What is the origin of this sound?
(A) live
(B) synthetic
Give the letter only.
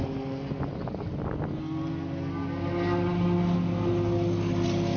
A